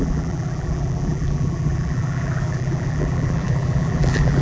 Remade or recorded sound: remade